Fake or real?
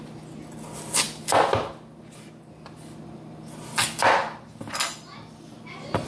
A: real